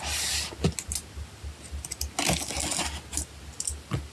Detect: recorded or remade recorded